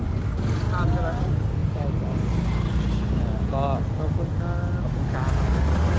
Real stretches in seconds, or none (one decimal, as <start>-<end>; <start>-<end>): 0.0-6.0